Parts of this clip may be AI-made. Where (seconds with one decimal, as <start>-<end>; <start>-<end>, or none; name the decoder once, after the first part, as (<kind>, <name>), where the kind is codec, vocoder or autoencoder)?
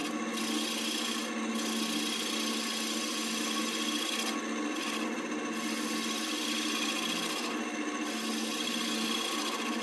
none